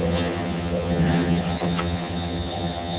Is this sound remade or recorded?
remade